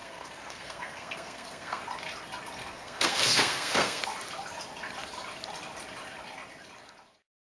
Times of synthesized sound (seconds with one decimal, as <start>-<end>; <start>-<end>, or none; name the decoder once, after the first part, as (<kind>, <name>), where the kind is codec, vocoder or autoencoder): 0.0-1.8 (codec, SNAC); 2.6-4.0